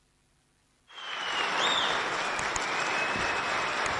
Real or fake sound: real